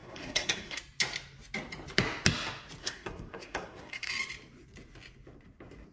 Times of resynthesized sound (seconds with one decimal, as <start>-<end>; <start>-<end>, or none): 0.0-0.8; 2.8-4.1